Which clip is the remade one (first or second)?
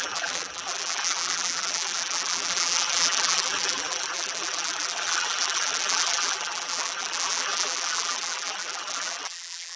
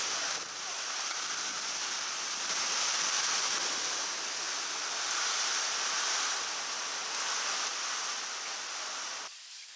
first